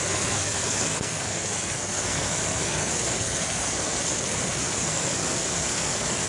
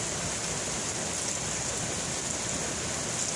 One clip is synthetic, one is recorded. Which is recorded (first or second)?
second